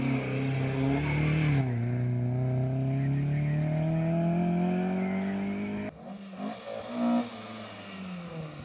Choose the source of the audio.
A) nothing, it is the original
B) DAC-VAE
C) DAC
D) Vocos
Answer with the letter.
A